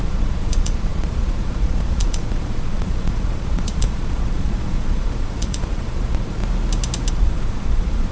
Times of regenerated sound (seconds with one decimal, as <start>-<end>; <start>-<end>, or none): 0.0-6.4; 7.1-8.1